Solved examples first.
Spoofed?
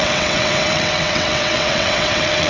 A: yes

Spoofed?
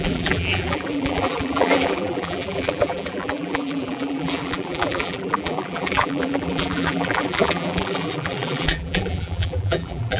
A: yes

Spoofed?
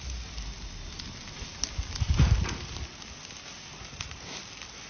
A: no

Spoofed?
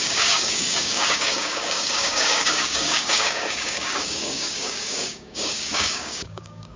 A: yes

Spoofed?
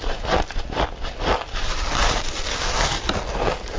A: no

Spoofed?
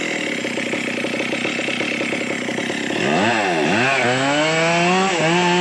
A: no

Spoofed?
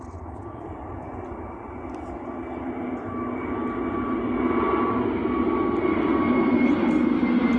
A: no